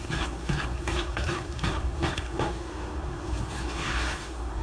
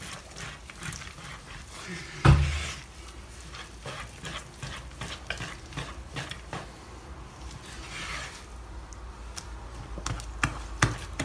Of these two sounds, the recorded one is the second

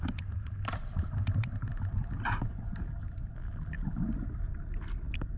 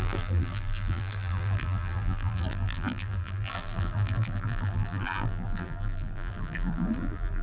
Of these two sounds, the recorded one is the first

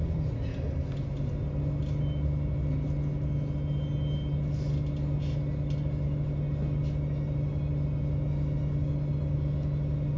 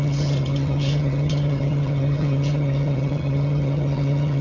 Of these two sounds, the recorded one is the first